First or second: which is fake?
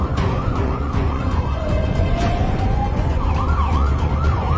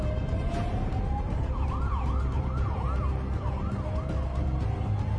first